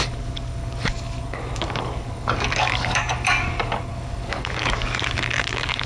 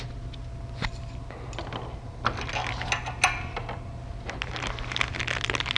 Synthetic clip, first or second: first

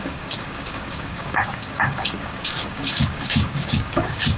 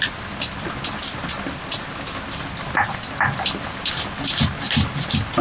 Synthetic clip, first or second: first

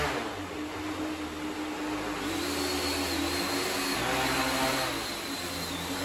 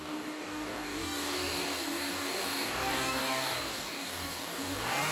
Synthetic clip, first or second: second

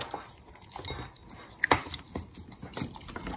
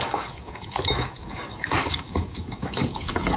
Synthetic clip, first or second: second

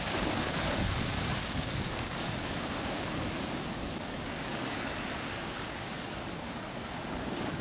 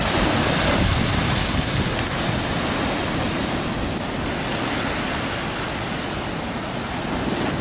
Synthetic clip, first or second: first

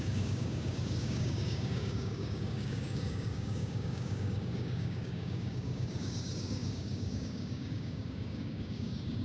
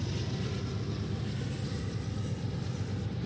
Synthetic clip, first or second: first